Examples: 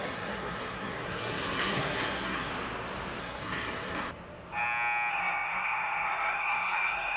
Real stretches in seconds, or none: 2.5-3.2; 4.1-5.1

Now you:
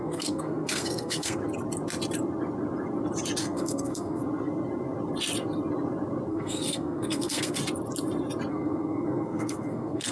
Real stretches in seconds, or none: 1.4-3.4; 4.2-6.3; 7.6-8.5

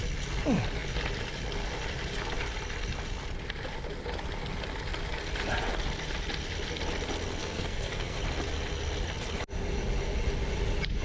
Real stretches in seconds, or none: 0.0-7.4; 8.2-11.0

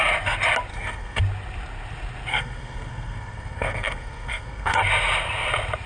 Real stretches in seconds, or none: 0.0-0.7; 1.2-2.3; 4.8-5.9

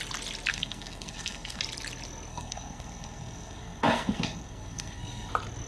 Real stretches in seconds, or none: 0.0-0.5; 1.6-2.3; 5.3-5.7

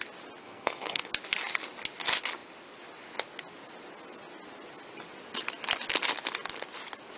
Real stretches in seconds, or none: 0.0-0.4; 1.0-7.2

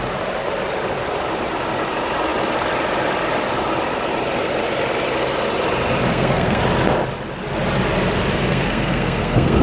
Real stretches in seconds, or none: 0.0-6.1; 6.6-8.5